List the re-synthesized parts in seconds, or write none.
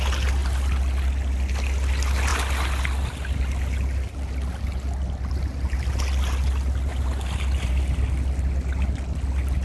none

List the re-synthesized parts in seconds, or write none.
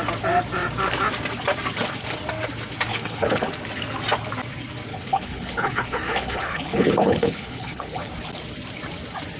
2.9-3.5 (codec, HILCodec); 4.9-8.1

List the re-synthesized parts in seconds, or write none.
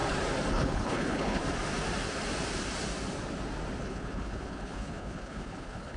0.5-1.4 (codec, HILCodec); 3.8-6.0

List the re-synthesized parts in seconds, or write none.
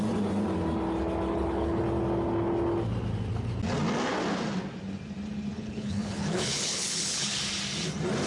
1.3-1.8 (codec, HILCodec); 5.5-7.4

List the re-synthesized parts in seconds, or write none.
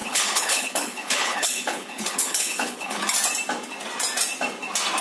0.0-3.0 (codec, HILCodec)